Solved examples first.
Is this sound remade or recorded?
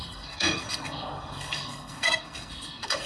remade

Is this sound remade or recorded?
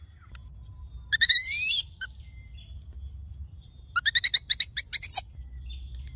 recorded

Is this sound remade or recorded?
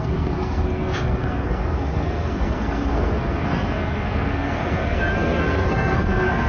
remade